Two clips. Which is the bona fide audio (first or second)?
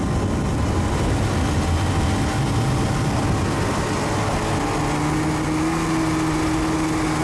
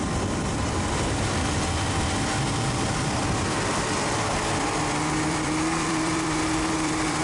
first